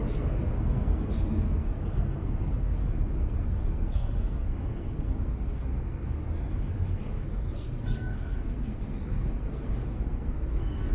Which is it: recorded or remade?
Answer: remade